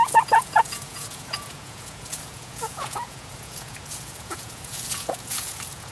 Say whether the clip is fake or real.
fake